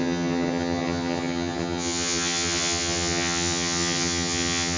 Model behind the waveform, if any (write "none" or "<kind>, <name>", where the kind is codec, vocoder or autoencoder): vocoder, HiFi-GAN